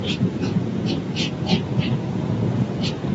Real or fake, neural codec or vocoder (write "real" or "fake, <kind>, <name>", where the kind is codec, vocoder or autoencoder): fake, vocoder, Vocos